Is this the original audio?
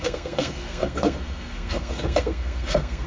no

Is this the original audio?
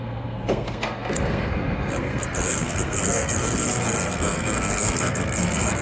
no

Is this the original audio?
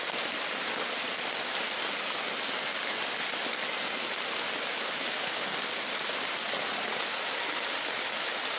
yes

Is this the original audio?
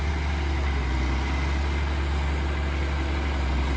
yes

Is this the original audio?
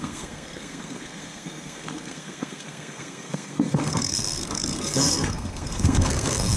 no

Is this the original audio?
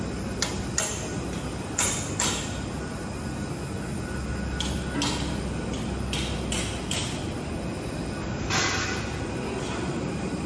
yes